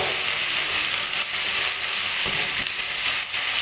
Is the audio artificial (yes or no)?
no